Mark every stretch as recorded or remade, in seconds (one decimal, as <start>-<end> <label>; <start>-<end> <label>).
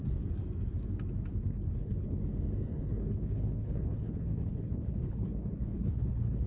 0.0-1.3 recorded; 1.3-2.2 remade; 2.2-2.7 recorded; 2.7-6.5 remade